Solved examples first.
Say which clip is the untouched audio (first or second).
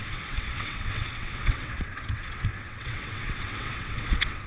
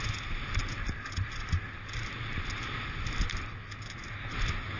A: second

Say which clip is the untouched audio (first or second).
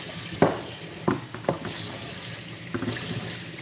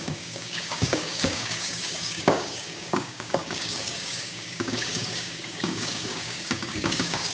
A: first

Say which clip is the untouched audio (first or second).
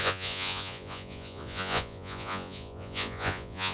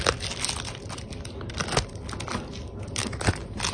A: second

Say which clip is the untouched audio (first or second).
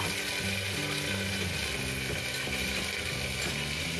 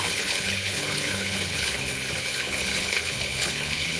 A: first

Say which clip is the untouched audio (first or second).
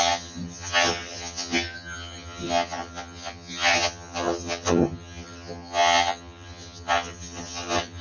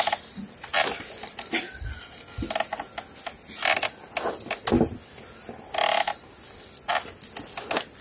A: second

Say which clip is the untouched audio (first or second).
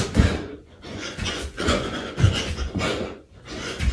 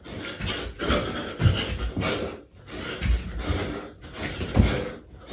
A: second